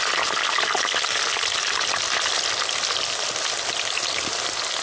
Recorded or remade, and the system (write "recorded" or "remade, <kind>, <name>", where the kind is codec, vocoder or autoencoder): recorded